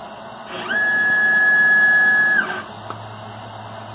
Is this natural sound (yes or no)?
yes